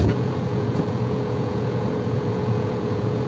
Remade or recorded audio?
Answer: remade